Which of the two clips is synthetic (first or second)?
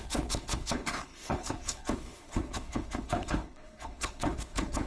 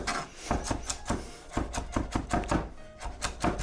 first